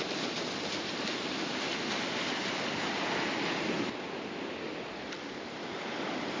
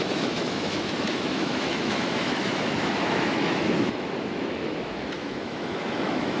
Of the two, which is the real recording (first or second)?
first